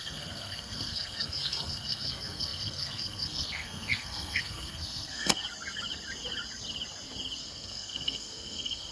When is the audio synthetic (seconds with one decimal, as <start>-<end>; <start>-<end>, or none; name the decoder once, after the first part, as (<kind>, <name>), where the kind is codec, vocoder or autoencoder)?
0.0-5.4 (codec, SNAC); 7.4-8.9